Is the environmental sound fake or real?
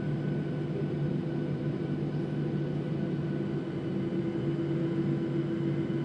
real